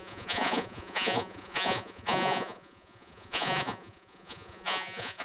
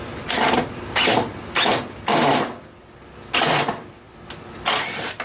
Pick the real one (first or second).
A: second